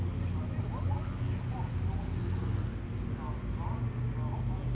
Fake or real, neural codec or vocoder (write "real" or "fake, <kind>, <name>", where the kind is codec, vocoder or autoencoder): real